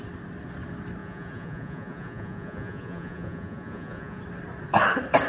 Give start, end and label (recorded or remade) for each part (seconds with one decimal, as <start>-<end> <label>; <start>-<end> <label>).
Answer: 0.0-1.0 recorded; 1.0-4.2 remade; 4.2-5.3 recorded